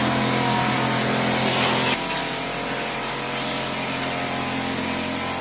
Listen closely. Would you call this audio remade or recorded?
recorded